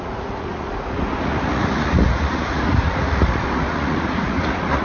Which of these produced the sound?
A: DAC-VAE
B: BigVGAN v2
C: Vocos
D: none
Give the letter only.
C